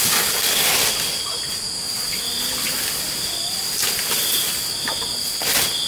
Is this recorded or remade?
recorded